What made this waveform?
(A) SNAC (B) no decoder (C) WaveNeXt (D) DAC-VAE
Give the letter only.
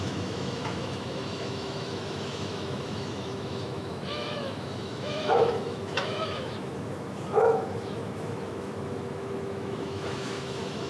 D